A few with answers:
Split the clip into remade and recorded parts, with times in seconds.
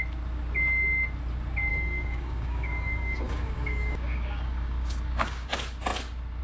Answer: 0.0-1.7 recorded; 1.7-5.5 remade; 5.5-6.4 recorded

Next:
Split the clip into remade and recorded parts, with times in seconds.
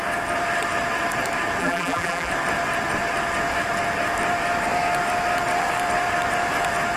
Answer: 0.0-1.6 recorded; 1.6-2.3 remade; 2.3-7.0 recorded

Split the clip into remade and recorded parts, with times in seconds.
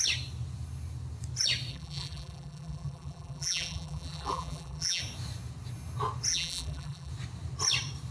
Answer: 0.0-1.7 recorded; 1.7-5.0 remade; 5.0-6.3 recorded; 6.3-7.1 remade; 7.1-8.1 recorded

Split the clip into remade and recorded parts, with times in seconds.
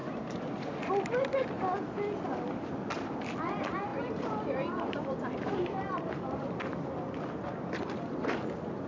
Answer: 0.0-3.9 recorded; 3.9-6.6 remade; 6.6-8.9 recorded